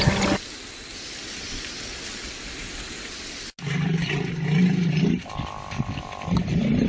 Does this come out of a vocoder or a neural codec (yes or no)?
no